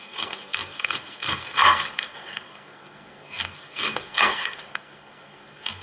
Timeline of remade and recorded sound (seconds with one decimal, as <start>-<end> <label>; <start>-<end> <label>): 0.0-5.8 remade